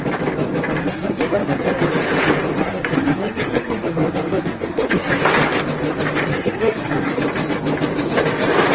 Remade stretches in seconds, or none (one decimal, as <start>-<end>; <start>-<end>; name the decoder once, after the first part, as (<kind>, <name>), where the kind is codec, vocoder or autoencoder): 0.8-1.8 (codec, SNAC); 2.6-5.2; 6.3-7.2